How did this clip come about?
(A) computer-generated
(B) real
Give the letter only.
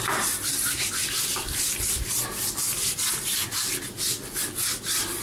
B